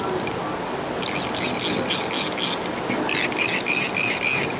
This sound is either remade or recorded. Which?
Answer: recorded